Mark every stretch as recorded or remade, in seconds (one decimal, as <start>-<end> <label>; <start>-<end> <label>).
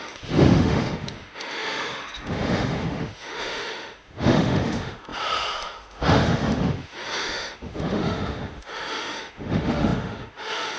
0.0-10.8 remade